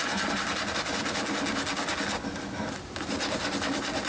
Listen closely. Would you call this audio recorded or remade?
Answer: recorded